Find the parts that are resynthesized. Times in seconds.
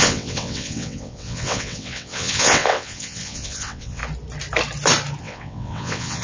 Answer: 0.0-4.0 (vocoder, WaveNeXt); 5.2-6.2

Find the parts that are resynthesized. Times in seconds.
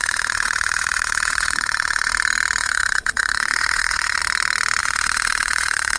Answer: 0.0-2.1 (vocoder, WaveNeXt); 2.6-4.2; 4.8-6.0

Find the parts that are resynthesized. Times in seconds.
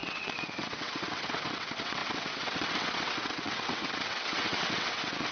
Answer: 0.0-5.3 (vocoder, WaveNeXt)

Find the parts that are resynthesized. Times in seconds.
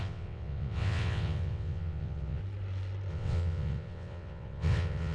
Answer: 0.0-2.4 (vocoder, WaveNeXt); 3.1-5.1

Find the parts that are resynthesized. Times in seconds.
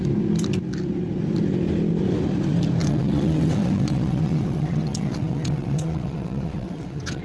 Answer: 2.8-7.2 (vocoder, WaveNeXt)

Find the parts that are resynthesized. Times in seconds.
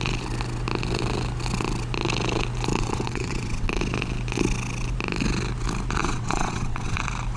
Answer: 2.7-3.8 (vocoder, WaveNeXt); 6.0-7.0